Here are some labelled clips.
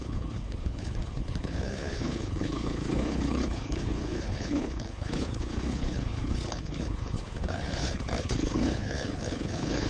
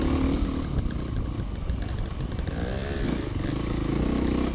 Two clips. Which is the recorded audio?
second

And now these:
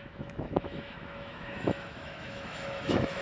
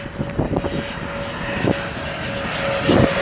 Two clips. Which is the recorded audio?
second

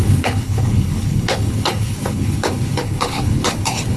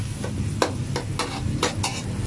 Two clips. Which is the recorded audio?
second